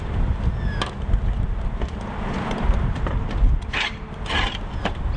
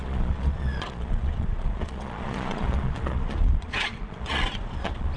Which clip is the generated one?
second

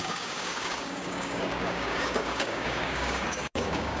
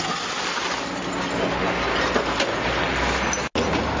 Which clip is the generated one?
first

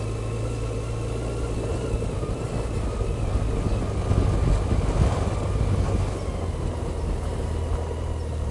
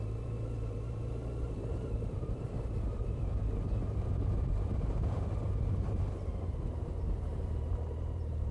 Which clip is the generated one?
second